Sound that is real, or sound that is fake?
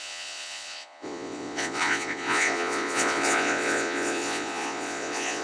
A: fake